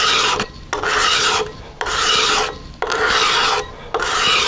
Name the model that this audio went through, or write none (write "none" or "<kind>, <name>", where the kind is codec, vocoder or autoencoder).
none